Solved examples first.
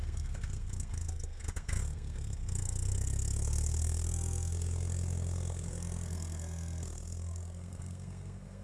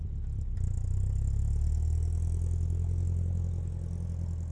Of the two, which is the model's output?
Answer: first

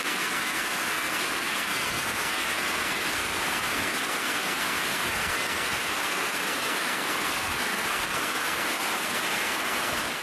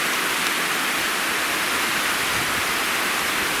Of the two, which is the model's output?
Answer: first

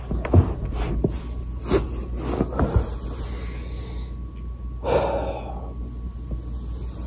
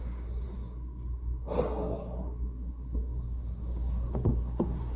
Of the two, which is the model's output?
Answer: second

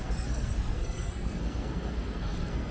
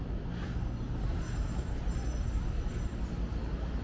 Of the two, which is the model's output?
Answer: first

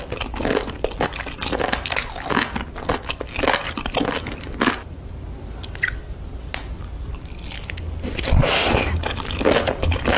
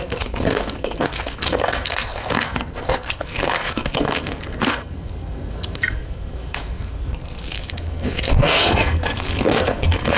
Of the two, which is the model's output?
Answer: second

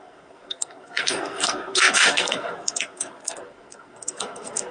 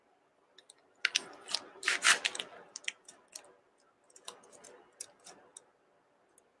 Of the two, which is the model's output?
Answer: first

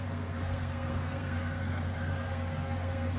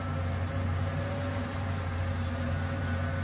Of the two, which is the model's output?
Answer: first